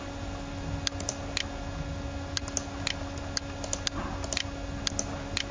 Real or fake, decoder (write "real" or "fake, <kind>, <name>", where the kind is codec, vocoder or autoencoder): real